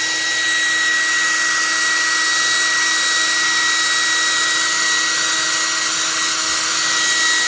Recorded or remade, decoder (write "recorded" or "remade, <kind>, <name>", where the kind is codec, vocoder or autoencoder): recorded